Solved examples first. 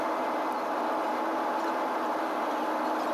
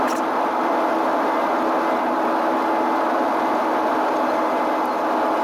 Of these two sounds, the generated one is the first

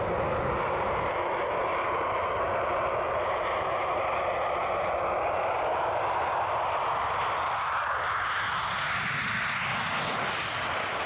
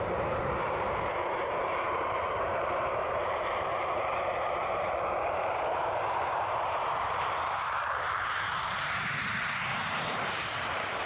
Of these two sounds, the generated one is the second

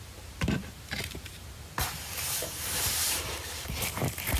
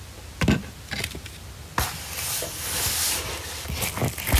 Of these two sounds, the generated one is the first